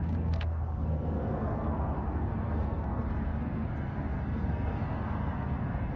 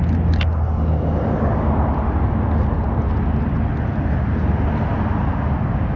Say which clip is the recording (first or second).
second